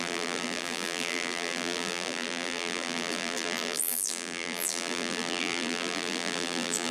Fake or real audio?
fake